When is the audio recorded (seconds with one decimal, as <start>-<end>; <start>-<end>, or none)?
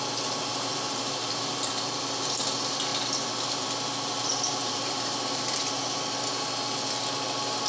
0.0-0.5; 1.7-2.9; 5.6-7.7